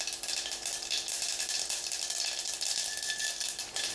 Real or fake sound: real